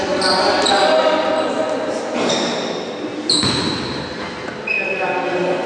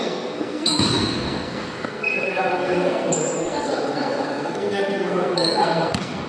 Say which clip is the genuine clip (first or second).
first